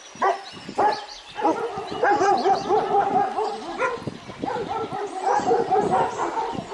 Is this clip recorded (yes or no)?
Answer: yes